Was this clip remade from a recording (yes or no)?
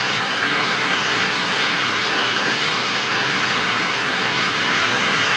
yes